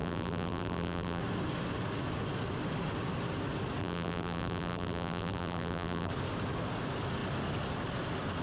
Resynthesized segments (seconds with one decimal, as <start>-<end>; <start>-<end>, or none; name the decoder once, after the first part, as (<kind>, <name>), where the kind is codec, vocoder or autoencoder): 0.0-1.2 (vocoder, BigVGAN v2); 3.8-6.1